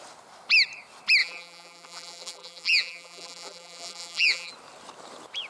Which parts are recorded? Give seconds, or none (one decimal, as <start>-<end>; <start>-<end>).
0.0-1.2; 4.5-5.5